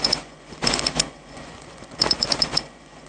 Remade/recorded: remade